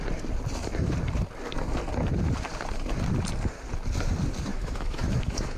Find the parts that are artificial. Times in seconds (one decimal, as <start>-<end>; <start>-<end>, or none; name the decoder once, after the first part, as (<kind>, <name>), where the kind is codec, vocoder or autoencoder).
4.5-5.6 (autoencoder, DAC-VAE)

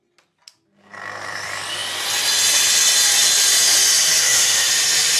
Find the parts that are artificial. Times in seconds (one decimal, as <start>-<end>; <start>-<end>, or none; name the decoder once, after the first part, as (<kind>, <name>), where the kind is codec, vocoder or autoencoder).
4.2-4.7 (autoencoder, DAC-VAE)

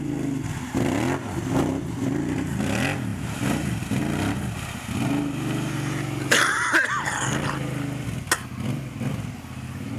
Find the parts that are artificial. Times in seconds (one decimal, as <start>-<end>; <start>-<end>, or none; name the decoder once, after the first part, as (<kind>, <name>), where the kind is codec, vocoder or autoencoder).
none

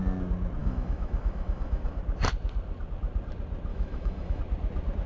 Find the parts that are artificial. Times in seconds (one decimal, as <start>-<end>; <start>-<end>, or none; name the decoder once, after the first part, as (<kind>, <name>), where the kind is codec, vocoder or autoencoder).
0.6-2.0 (autoencoder, DAC-VAE); 3.7-4.4

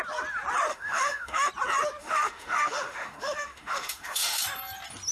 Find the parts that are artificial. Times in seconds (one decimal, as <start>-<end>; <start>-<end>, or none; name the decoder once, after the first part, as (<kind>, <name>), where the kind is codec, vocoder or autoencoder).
0.7-1.5 (autoencoder, DAC-VAE); 2.0-4.4

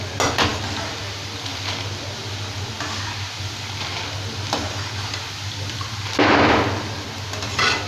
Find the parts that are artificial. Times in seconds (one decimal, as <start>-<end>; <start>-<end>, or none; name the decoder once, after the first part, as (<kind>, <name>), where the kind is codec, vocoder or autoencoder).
none

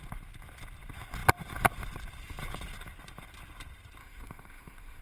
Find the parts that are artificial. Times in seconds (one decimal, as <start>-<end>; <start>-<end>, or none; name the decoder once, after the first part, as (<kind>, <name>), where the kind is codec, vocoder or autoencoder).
4.0-5.0 (autoencoder, DAC-VAE)